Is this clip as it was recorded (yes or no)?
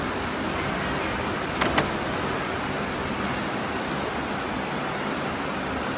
yes